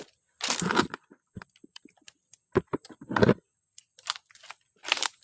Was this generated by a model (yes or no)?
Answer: yes